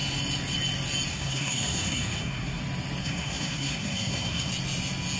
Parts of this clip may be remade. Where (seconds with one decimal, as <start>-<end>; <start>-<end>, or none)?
1.1-2.6; 3.0-4.5